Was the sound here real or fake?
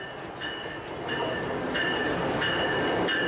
real